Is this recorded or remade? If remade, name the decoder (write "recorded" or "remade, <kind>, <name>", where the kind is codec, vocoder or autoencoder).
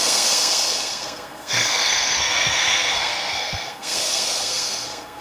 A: remade, codec, SNAC